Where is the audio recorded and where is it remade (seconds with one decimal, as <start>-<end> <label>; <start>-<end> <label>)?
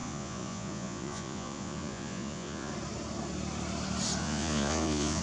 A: 0.0-2.7 remade; 2.7-4.2 recorded; 4.2-5.2 remade